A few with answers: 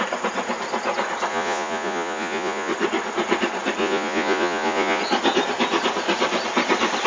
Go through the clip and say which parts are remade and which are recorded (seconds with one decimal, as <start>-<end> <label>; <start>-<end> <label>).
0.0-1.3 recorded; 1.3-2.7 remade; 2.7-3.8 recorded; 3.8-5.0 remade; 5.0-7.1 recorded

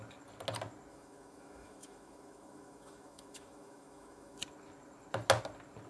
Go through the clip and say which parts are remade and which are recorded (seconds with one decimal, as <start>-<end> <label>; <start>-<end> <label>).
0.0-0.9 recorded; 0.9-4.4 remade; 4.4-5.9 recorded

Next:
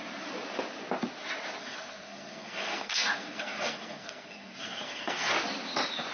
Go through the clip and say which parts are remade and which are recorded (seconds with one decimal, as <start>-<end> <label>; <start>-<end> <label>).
0.0-1.6 recorded; 1.6-5.3 remade; 5.3-6.1 recorded